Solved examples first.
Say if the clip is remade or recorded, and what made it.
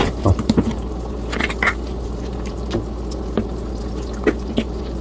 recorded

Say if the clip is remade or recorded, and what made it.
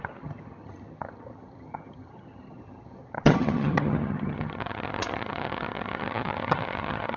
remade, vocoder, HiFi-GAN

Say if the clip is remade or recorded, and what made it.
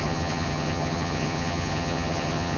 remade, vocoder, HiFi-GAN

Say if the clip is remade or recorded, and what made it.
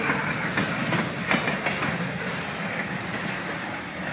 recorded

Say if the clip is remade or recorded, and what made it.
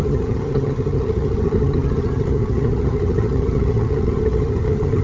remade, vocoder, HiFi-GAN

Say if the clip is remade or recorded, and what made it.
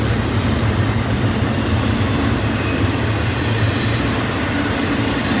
recorded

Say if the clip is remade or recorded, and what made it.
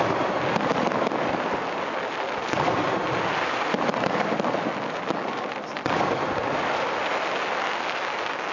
recorded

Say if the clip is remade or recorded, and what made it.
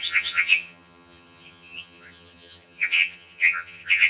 remade, vocoder, HiFi-GAN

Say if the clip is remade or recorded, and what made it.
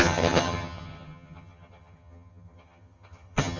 remade, vocoder, HiFi-GAN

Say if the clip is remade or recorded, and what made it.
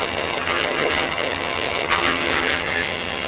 remade, vocoder, HiFi-GAN